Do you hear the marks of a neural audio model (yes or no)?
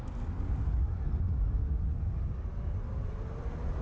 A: no